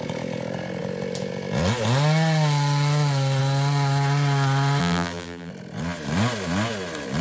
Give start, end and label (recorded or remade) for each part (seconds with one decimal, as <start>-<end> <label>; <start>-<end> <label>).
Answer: 0.0-4.8 recorded; 4.8-5.5 remade; 5.5-7.2 recorded